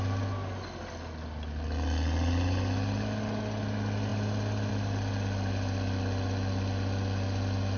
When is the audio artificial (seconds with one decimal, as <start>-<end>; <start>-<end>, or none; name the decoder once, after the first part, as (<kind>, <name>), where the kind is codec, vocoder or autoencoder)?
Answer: none